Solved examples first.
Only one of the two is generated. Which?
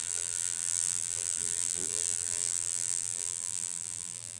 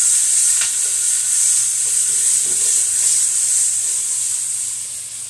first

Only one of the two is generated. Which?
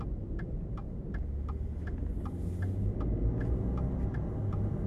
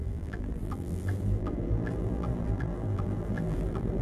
second